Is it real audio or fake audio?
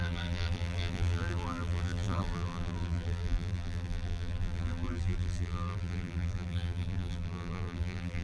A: fake